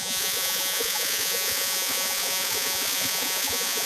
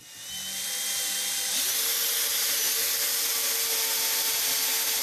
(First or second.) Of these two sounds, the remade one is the first